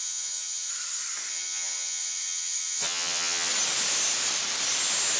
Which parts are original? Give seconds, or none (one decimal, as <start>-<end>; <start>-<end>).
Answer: 0.7-1.3; 3.5-5.2